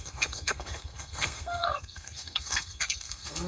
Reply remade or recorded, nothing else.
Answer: remade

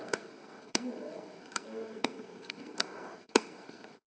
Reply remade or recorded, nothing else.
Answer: remade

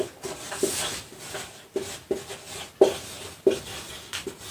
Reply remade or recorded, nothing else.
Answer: recorded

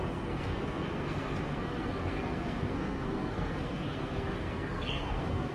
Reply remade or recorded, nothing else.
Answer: remade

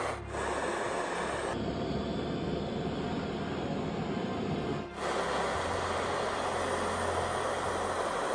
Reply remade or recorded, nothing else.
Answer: recorded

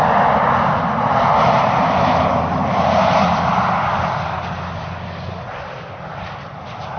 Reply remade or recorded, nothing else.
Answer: recorded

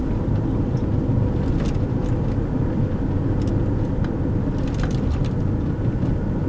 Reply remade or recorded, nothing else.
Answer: recorded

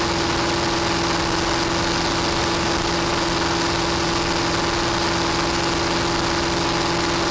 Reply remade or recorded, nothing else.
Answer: recorded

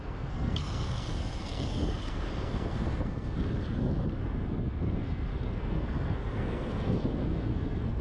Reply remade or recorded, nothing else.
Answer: remade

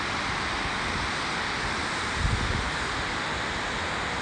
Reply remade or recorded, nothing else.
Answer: recorded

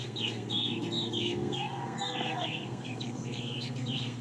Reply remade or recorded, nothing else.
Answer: remade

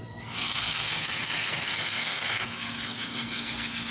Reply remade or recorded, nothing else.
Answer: remade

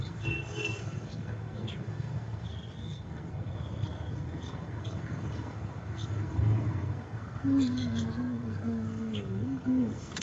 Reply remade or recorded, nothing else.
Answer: remade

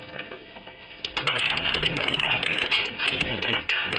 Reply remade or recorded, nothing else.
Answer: remade